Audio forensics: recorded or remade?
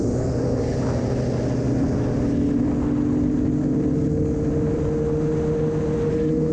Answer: recorded